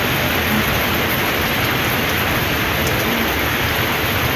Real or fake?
real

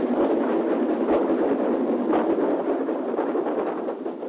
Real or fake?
real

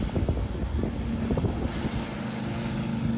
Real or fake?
real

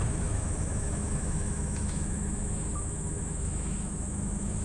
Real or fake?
fake